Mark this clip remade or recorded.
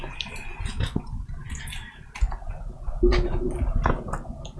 recorded